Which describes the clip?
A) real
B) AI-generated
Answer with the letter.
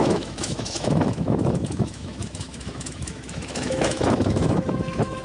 B